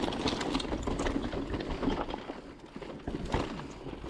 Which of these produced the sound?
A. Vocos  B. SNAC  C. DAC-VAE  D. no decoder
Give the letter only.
D